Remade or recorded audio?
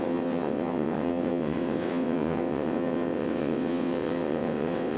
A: remade